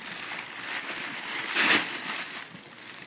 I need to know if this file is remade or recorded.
recorded